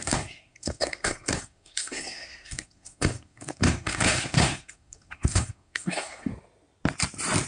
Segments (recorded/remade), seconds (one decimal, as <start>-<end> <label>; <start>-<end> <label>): 0.0-6.3 remade; 6.3-7.5 recorded